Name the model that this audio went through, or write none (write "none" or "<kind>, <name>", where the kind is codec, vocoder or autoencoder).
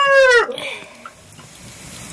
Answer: none